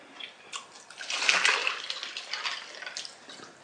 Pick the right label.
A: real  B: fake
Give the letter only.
A